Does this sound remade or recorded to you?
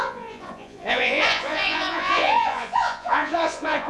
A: remade